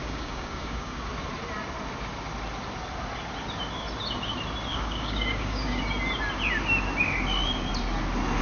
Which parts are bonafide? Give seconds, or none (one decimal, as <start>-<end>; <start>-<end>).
1.1-4.7; 5.8-8.4